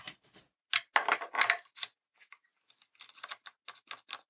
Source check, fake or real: real